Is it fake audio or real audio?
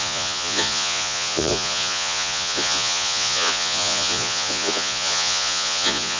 fake